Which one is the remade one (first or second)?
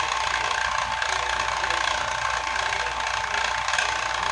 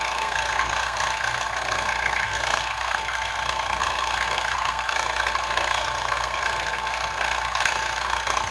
second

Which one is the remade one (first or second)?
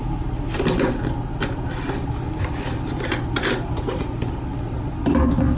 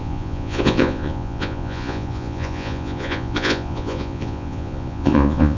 second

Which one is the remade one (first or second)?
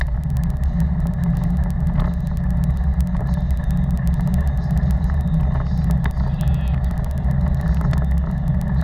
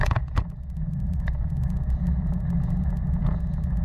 second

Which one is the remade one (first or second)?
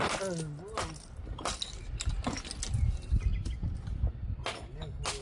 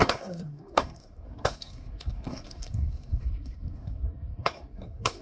second